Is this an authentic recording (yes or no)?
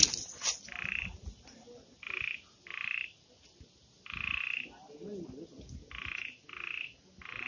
yes